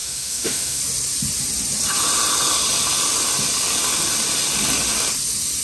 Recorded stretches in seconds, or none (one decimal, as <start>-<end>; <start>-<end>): 0.8-5.6

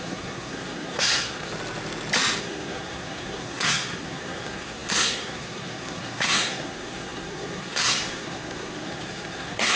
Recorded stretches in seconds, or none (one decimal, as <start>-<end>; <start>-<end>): 1.5-2.4

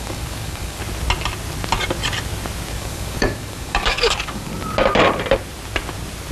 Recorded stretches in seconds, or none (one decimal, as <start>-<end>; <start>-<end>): 0.8-2.7; 4.5-6.3